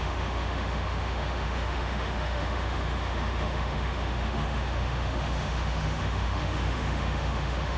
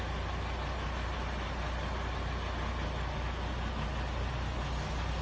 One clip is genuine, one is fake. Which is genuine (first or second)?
second